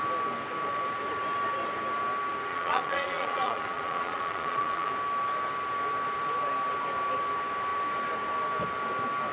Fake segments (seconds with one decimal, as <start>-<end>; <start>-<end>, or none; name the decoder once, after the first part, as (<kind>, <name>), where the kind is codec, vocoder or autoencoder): 2.5-4.9 (vocoder, Vocos)